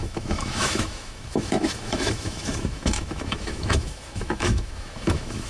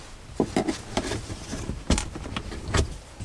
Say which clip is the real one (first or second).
second